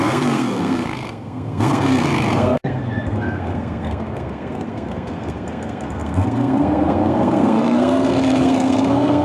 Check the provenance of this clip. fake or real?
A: fake